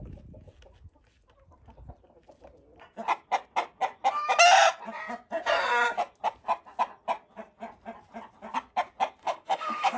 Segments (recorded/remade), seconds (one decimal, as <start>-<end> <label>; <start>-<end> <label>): 0.0-9.2 recorded; 9.2-10.0 remade